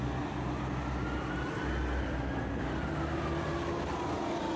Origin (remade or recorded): recorded